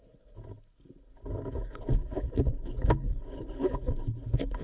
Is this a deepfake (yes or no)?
yes